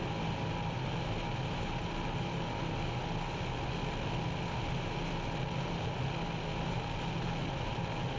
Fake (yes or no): no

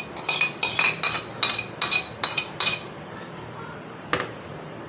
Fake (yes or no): no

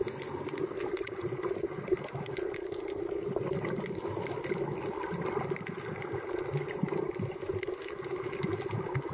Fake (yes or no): no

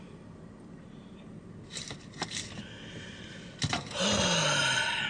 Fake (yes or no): no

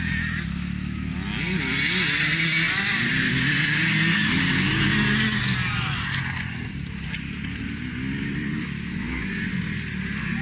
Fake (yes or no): no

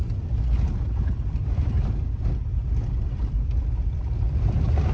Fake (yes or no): no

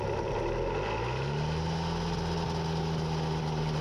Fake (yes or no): no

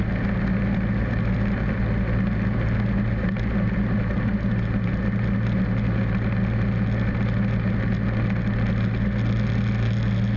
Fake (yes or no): no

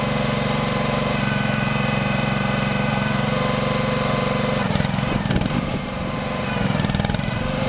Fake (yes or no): yes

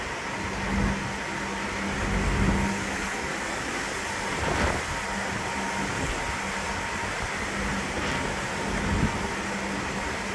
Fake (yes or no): no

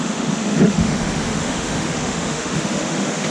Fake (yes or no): yes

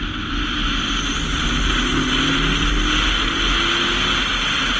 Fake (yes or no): no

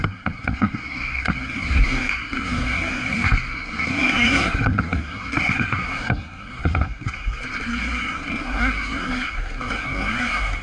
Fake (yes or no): yes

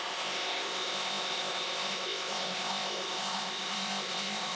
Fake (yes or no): yes